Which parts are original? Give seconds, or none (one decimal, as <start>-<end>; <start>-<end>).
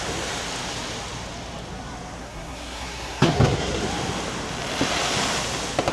0.0-2.2; 3.8-5.9